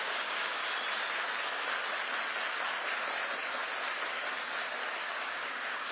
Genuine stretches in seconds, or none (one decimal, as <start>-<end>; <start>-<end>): 0.6-4.1; 4.5-5.0